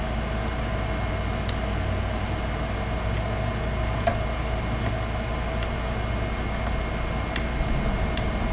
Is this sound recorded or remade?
recorded